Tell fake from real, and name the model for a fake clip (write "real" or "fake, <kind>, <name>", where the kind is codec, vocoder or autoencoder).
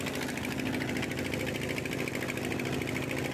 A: real